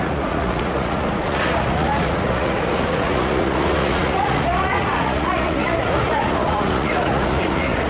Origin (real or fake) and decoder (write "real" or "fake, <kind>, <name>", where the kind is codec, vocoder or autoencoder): fake, vocoder, Vocos